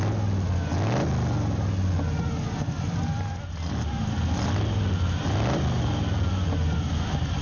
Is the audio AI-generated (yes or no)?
no